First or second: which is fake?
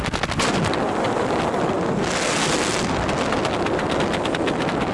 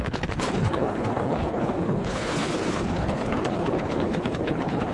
second